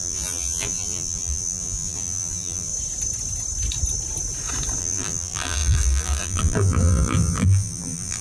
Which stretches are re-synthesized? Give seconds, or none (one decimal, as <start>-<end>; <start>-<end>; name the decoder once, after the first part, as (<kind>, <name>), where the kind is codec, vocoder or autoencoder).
0.0-2.7 (vocoder, BigVGAN v2); 4.8-8.2